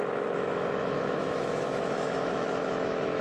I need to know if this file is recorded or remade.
remade